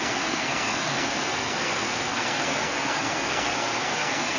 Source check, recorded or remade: remade